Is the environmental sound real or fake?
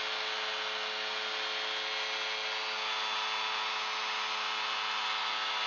real